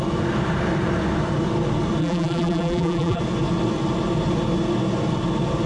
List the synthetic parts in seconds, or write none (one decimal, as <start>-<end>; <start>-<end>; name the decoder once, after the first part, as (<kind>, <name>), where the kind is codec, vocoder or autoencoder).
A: 2.0-3.2 (vocoder, BigVGAN v2)